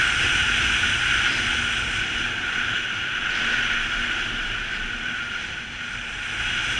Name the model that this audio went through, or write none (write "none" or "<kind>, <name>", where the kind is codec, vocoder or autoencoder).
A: none